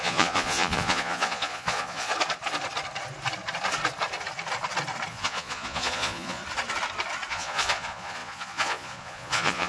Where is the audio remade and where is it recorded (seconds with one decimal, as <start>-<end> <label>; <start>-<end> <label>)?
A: 0.0-2.1 remade; 2.1-5.1 recorded; 5.1-6.4 remade; 6.4-7.3 recorded; 7.3-9.7 remade